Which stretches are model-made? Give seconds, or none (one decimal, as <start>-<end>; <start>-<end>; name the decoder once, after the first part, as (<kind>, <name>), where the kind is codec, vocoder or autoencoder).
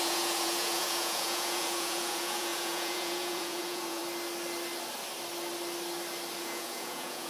0.0-4.0 (vocoder, Vocos); 6.4-7.3